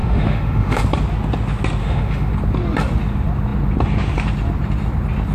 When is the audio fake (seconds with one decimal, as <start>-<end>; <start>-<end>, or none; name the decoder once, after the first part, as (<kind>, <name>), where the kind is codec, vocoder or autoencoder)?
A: 0.0-0.8 (autoencoder, DAC-VAE); 1.8-2.3